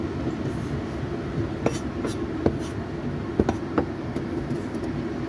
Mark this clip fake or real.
real